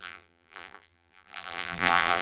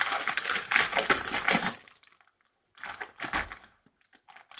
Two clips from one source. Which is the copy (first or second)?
first